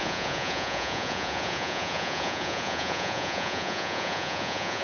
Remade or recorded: remade